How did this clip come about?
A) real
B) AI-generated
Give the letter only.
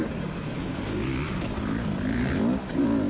A